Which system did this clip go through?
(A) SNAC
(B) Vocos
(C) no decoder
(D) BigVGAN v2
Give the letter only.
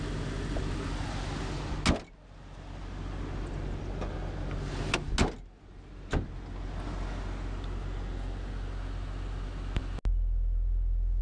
C